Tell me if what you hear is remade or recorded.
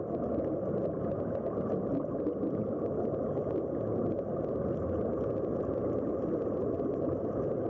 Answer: recorded